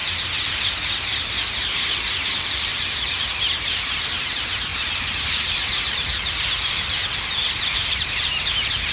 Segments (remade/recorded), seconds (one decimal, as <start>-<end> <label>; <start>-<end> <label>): 0.0-0.9 recorded; 0.9-2.7 remade; 2.7-3.6 recorded; 3.6-4.7 remade; 4.7-7.0 recorded; 7.0-8.9 remade